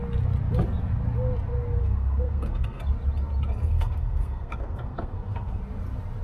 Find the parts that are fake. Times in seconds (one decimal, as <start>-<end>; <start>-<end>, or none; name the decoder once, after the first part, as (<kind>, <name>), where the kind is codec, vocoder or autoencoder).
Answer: 1.8-2.8 (codec, SNAC); 3.7-5.6